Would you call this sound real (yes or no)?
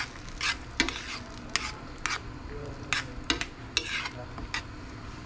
yes